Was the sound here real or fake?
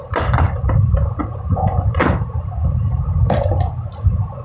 fake